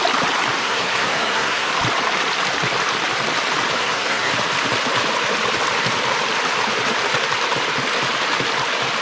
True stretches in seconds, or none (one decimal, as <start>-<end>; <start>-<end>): 0.0-0.6; 1.7-3.8; 4.3-9.0